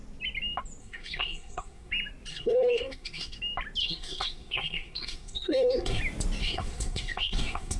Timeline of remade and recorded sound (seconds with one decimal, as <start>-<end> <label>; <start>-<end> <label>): 0.0-0.8 recorded; 0.8-1.9 remade; 1.9-2.3 recorded; 2.3-3.4 remade; 3.4-3.8 recorded; 3.8-6.0 remade; 6.0-6.4 recorded; 6.4-7.8 remade